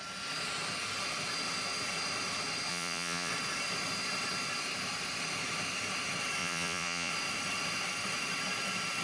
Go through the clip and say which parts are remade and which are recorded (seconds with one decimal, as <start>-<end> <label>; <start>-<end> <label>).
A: 0.0-2.7 recorded; 2.7-3.3 remade; 3.3-6.4 recorded; 6.4-7.1 remade; 7.1-9.0 recorded